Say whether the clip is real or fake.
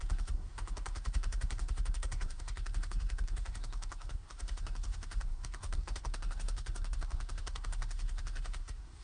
fake